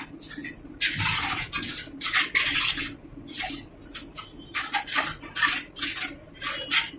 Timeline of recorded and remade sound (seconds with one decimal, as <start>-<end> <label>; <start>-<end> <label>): 0.0-0.4 recorded; 0.4-2.8 remade; 2.8-7.0 recorded